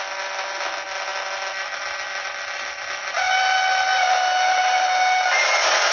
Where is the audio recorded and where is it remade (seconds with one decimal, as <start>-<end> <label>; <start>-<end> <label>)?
0.0-5.9 recorded